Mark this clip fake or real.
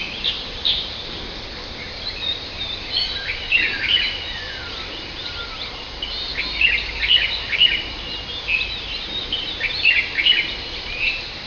fake